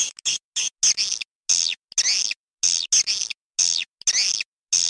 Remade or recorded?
recorded